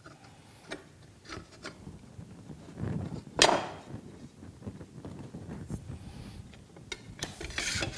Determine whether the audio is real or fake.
real